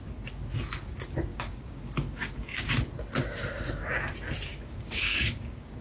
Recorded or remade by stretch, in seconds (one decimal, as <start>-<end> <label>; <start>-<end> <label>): 0.0-1.3 recorded; 1.3-2.8 remade; 2.8-4.5 recorded; 4.5-5.8 remade

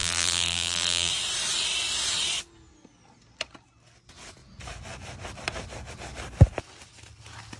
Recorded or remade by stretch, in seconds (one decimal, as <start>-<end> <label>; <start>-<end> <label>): 0.0-1.1 remade; 1.1-7.6 recorded

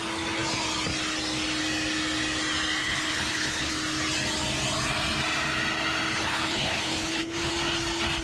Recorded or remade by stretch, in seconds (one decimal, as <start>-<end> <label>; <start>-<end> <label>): 0.0-2.8 recorded; 2.8-3.7 remade; 3.7-6.1 recorded; 6.1-7.5 remade; 7.5-8.2 recorded

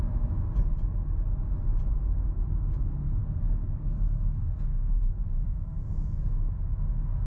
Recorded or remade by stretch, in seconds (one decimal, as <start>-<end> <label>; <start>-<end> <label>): 0.0-3.2 recorded; 3.2-6.5 remade; 6.5-7.3 recorded

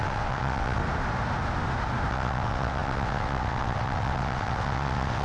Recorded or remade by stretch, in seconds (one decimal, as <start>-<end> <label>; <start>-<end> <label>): 0.0-0.8 remade; 0.8-2.1 recorded; 2.1-5.2 remade

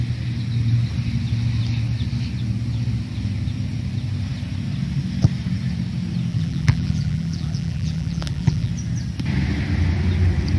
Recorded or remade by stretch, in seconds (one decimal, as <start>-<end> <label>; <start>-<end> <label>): 0.0-6.3 recorded; 6.3-8.7 remade; 8.7-10.6 recorded

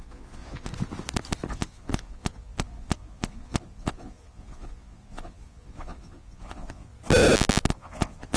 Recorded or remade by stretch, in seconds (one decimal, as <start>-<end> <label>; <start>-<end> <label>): 0.0-0.7 remade; 0.7-1.5 recorded; 1.5-6.9 remade; 6.9-7.7 recorded; 7.7-8.4 remade

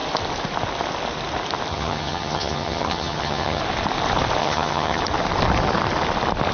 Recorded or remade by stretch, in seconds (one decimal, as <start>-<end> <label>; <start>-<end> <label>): 0.0-1.7 recorded; 1.7-3.6 remade; 3.6-4.4 recorded; 4.4-5.0 remade; 5.0-6.5 recorded